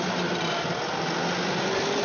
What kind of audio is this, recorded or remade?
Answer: recorded